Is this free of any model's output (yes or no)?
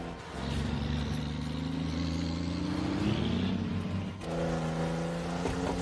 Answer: yes